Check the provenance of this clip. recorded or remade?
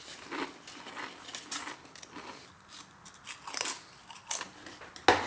recorded